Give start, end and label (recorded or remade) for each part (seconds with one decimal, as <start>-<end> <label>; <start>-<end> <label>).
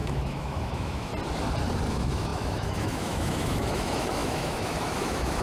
0.0-1.1 remade; 1.1-1.9 recorded; 1.9-5.4 remade